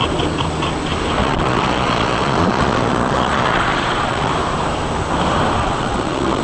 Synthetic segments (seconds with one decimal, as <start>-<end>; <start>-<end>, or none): 1.2-4.3; 5.6-6.4